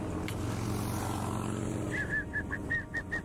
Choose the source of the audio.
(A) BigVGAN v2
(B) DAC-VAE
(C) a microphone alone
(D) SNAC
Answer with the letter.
C